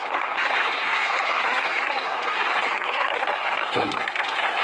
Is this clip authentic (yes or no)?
no